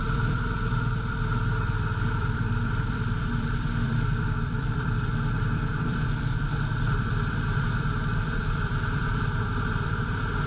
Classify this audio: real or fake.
fake